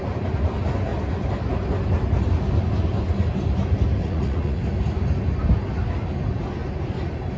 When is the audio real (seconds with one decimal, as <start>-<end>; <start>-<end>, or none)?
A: 0.0-4.0; 4.6-7.4